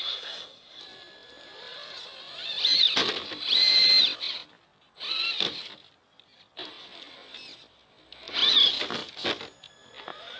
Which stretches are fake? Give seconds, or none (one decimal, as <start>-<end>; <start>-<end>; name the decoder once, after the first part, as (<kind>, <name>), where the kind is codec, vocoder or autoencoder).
0.0-0.8 (codec, SNAC)